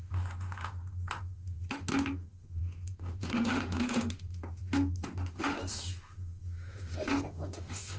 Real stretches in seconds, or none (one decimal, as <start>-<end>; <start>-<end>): none